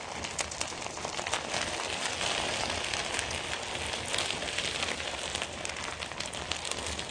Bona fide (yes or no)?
yes